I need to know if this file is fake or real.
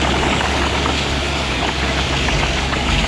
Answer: fake